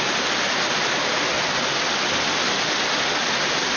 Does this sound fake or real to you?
real